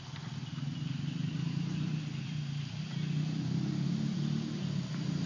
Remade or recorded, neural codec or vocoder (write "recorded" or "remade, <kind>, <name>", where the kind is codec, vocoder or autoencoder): recorded